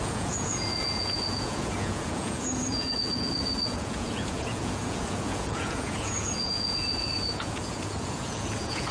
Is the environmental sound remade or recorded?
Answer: remade